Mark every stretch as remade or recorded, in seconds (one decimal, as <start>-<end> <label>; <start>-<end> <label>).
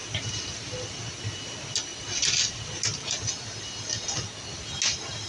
0.0-1.0 remade; 1.0-5.3 recorded